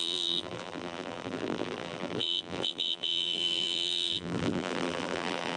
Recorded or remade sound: remade